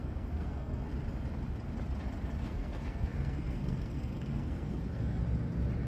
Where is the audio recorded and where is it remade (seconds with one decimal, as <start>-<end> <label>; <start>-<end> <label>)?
0.0-0.9 remade; 0.9-2.4 recorded; 2.4-5.2 remade; 5.2-5.9 recorded